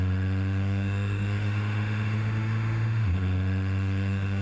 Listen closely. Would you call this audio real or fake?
fake